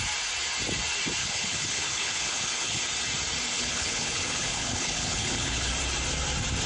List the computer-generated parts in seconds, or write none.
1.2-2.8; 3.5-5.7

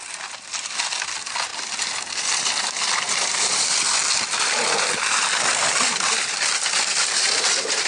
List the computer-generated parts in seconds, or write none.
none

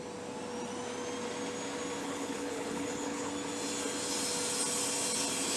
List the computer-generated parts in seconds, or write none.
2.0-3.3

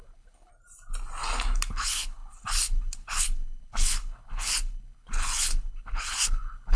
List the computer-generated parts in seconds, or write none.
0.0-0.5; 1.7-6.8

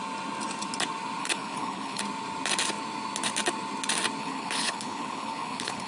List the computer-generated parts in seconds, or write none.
1.2-2.0; 4.2-5.9